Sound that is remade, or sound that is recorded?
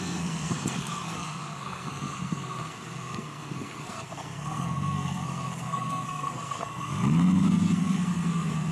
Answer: remade